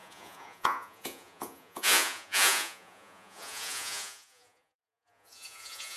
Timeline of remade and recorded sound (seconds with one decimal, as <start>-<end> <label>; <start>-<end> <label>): 0.0-6.0 remade